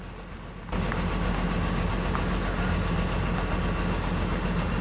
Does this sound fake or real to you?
real